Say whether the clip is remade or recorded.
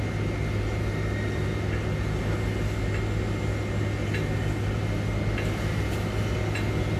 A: recorded